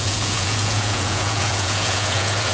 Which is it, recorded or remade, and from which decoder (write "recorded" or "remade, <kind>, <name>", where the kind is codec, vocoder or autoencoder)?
remade, vocoder, Vocos